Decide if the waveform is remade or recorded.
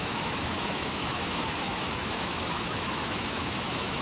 remade